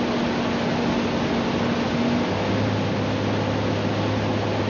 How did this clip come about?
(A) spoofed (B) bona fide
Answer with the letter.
B